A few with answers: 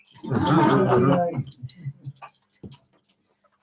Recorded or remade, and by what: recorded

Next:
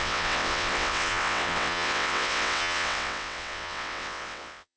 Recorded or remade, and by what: remade, vocoder, WaveNeXt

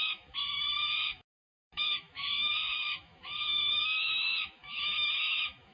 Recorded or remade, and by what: remade, autoencoder, DAC-VAE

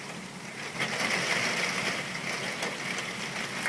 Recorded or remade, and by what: recorded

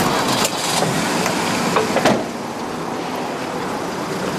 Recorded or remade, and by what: recorded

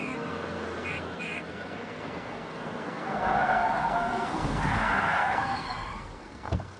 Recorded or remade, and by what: remade, codec, SNAC